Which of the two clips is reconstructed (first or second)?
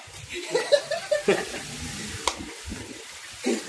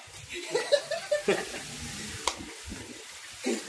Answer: first